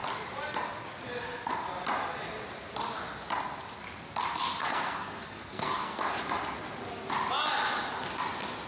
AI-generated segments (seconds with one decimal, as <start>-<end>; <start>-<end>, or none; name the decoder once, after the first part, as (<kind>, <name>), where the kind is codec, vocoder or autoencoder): 4.6-6.1 (codec, SNAC)